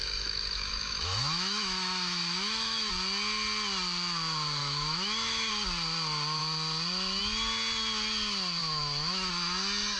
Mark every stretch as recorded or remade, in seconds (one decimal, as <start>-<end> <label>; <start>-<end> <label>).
0.0-2.9 remade; 2.9-4.6 recorded; 4.6-5.5 remade; 5.5-8.6 recorded; 8.6-9.3 remade; 9.3-10.0 recorded